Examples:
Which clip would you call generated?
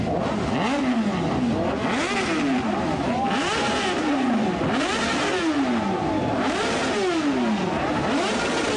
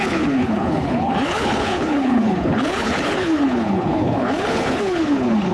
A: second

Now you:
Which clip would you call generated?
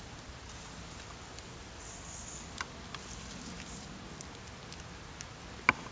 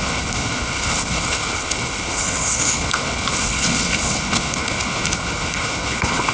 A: second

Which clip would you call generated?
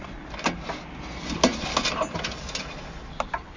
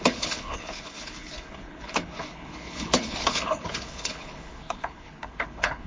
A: second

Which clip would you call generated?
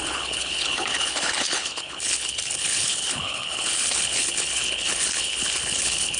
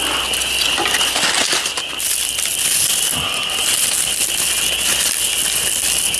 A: first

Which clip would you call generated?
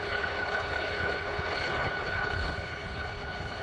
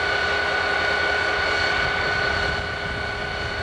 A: first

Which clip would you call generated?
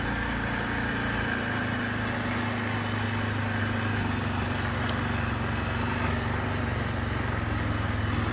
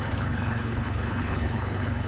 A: second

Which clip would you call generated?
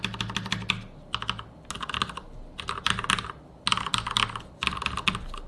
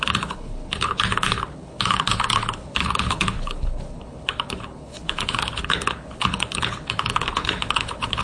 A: second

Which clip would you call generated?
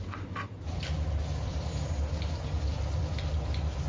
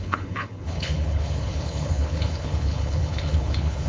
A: second